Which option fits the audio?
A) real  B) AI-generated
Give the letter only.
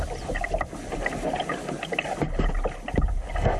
A